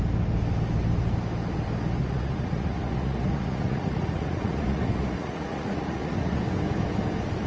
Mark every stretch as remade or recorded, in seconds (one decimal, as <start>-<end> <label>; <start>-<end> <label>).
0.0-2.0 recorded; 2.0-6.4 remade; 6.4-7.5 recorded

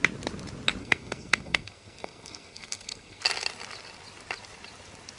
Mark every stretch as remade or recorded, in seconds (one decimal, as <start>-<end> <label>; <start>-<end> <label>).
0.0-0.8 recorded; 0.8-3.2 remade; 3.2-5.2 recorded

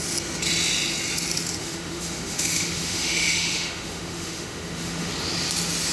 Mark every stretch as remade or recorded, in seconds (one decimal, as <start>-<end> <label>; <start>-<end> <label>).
0.0-1.6 recorded; 1.6-5.1 remade; 5.1-5.9 recorded